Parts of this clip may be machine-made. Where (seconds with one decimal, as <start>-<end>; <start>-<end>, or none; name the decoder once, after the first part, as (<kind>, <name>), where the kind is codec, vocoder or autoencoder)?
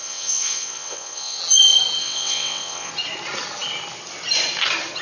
0.0-1.4 (vocoder, WaveNeXt); 2.0-2.9